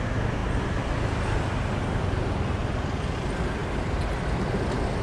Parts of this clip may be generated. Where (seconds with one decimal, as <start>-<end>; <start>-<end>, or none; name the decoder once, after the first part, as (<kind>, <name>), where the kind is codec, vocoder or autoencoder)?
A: none